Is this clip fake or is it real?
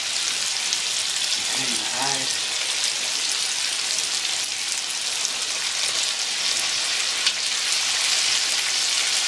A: real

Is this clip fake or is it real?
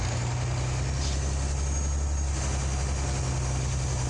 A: real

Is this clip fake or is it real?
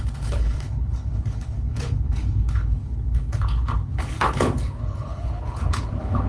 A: fake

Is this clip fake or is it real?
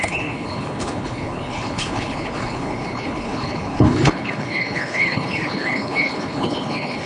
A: fake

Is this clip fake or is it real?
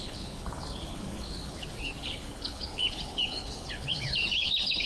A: fake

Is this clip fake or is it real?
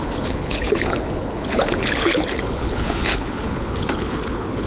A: fake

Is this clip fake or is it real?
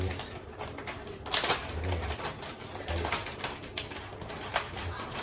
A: real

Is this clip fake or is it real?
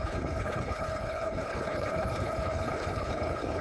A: fake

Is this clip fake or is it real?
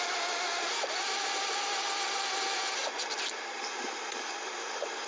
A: real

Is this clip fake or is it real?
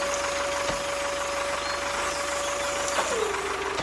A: real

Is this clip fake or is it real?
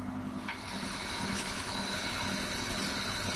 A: fake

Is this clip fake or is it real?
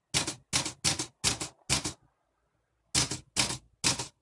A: real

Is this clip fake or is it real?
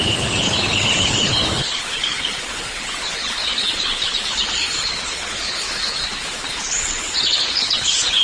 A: fake